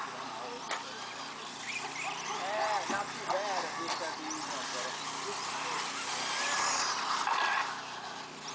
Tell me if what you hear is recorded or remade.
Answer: recorded